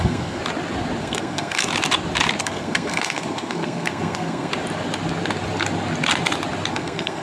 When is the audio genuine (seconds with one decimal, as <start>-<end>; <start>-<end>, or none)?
0.4-1.0; 1.7-2.4; 4.5-6.7